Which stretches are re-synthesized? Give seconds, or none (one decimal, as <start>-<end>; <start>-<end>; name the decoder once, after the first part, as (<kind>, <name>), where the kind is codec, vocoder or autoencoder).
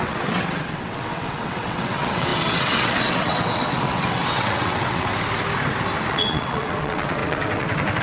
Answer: 0.0-5.1 (vocoder, WaveNeXt); 6.1-8.0